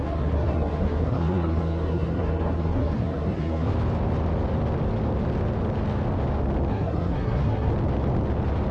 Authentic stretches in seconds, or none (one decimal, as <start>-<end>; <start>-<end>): 3.7-6.7; 7.7-8.7